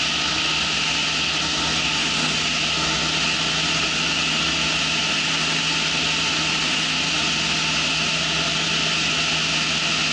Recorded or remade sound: recorded